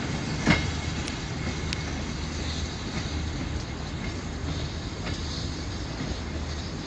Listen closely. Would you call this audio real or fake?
real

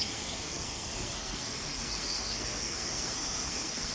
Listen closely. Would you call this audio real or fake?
fake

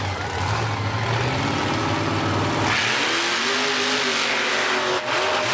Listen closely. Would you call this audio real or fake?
real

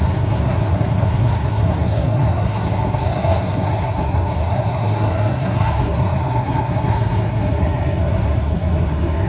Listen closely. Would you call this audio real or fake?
fake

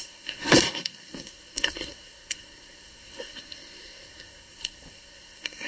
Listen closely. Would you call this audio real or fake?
fake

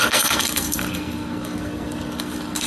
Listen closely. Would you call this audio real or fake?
fake